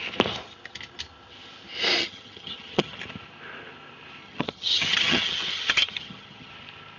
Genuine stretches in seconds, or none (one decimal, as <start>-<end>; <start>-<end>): 0.0-2.0; 3.0-4.2; 6.5-7.0